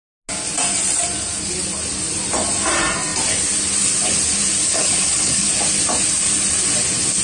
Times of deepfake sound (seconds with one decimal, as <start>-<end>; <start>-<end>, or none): 4.6-5.5